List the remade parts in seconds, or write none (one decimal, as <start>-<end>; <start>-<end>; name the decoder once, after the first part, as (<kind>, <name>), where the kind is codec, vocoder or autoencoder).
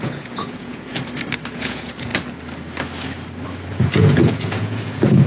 0.0-0.9 (vocoder, Vocos); 1.5-2.1; 3.7-5.3